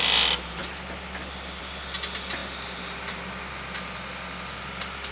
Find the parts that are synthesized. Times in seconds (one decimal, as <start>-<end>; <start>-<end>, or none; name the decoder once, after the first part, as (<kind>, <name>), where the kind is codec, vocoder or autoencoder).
none